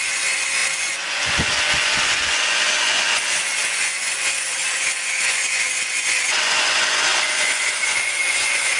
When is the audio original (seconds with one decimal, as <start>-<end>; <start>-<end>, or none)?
none